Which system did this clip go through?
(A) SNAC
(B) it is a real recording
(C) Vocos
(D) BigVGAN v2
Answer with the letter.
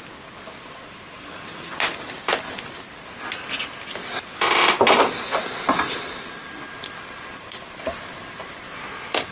B